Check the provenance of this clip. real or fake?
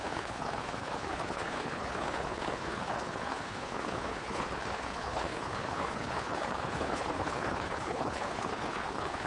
fake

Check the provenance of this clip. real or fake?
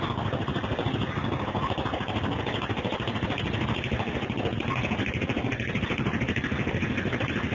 real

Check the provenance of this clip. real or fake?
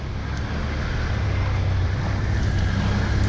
real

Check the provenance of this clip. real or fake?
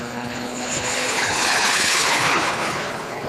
fake